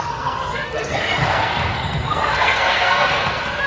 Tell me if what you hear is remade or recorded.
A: remade